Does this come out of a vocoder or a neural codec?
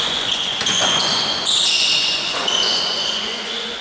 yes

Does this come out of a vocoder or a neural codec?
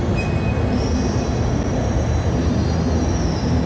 no